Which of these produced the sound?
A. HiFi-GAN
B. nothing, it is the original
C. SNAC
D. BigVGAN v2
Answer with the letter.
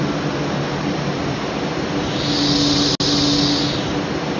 B